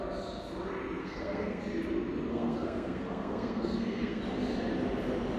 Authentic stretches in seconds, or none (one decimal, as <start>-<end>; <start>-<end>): 0.0-1.0; 1.6-2.3; 4.2-5.4